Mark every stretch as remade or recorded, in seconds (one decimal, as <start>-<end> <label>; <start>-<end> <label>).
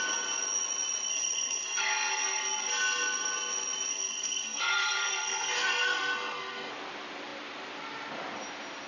0.0-1.1 recorded; 1.1-2.4 remade; 2.4-3.9 recorded; 3.9-6.7 remade; 6.7-8.9 recorded